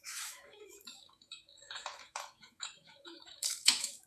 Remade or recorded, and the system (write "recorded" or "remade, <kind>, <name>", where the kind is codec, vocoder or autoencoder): remade, autoencoder, DAC-VAE